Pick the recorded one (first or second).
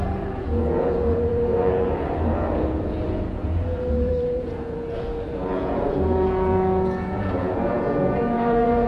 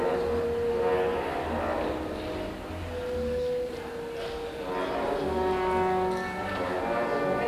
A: second